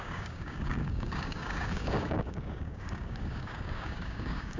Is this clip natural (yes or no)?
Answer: no